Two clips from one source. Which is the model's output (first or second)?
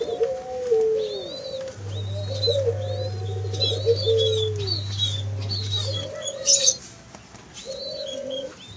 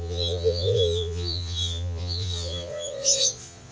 second